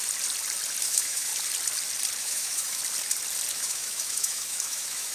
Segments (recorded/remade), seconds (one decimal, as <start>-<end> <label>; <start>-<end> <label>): 0.0-0.8 recorded; 0.8-1.3 remade; 1.3-2.2 recorded; 2.2-2.8 remade; 2.8-3.5 recorded; 3.5-5.1 remade